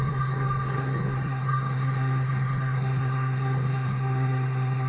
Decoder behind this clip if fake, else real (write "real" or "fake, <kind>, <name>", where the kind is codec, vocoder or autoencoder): fake, codec, SNAC